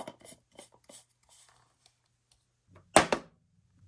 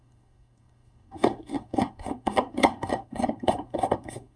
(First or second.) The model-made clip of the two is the second